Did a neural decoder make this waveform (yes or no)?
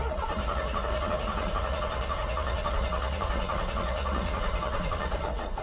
yes